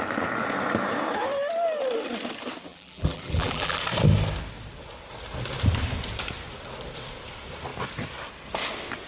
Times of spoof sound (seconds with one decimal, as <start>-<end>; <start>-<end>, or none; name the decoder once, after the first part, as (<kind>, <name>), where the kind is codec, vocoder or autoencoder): 2.7-3.8 (vocoder, BigVGAN v2)